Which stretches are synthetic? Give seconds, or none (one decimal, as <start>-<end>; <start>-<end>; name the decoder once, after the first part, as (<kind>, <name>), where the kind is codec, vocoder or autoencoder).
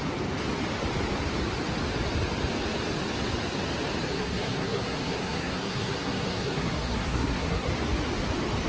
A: 4.1-7.7 (codec, SNAC)